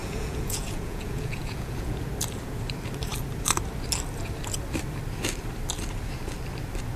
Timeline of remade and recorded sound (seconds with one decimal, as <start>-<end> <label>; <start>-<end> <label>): 0.0-1.9 remade; 1.9-7.0 recorded